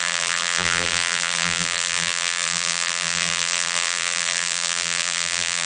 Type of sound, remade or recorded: remade